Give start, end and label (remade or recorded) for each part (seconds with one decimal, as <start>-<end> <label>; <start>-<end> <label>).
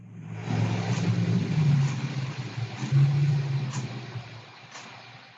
0.0-5.4 recorded